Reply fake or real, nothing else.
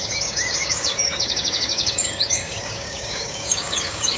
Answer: fake